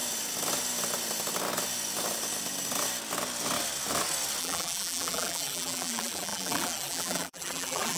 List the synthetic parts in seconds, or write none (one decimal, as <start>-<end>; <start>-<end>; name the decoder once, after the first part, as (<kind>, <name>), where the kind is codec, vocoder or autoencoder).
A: 4.4-8.0 (vocoder, BigVGAN v2)